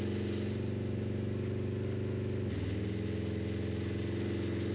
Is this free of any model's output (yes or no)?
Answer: yes